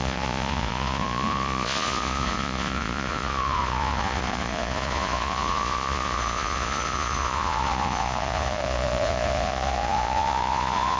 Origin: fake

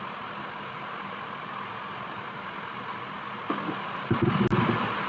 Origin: real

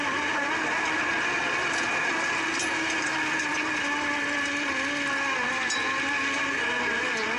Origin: real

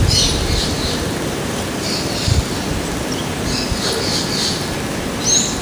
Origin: real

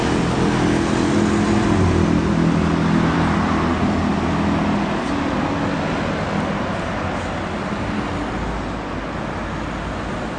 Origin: real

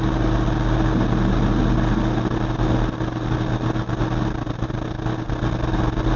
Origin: real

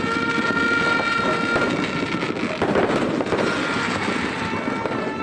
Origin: real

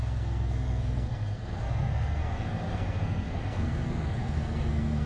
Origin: fake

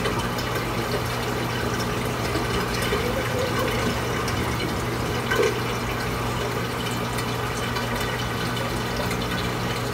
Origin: real